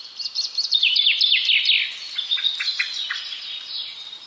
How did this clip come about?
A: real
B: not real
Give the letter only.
A